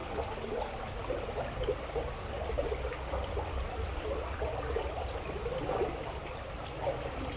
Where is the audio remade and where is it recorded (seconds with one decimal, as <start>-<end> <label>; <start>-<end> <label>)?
0.0-7.4 recorded